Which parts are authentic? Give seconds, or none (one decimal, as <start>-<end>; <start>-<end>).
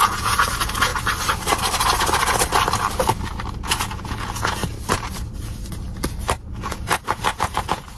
0.9-3.7; 4.6-6.6